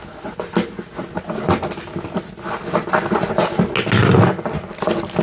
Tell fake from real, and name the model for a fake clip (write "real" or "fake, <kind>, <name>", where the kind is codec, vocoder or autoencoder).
real